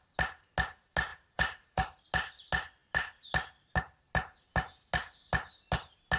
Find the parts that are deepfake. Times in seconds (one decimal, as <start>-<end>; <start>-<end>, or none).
1.1-2.0